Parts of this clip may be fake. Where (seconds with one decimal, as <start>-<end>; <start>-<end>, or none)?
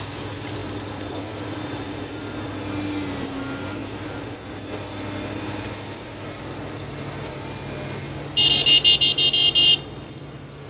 0.6-1.8; 9.6-10.7